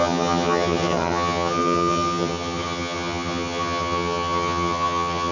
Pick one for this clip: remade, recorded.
remade